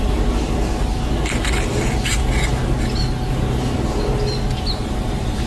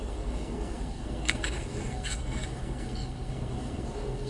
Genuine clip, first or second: first